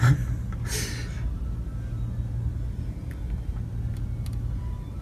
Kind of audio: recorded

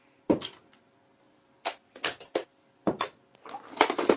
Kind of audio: recorded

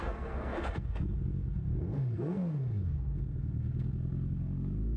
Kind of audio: remade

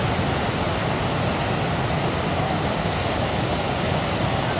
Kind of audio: recorded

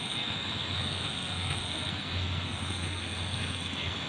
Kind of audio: remade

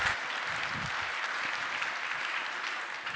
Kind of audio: recorded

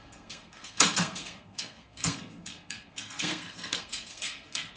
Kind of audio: remade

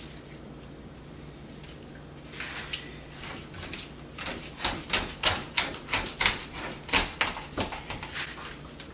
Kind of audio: recorded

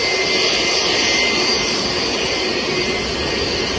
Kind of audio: recorded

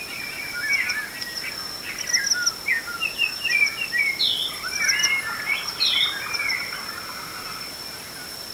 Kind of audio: recorded